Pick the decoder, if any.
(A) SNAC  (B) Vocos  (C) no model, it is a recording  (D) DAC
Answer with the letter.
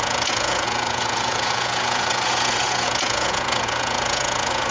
B